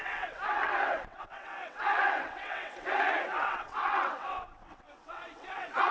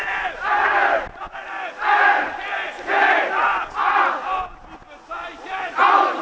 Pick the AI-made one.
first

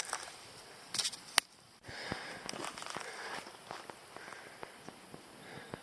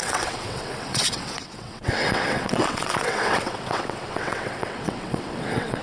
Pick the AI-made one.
second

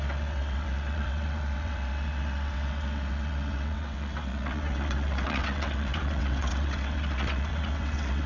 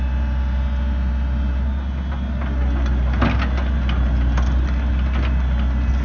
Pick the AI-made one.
first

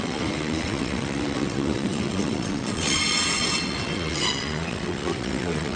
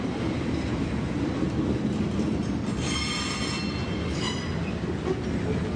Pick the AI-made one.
first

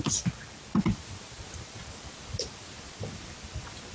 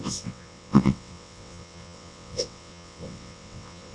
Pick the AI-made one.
second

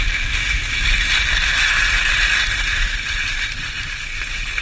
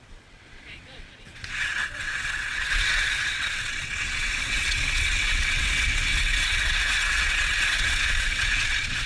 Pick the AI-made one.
second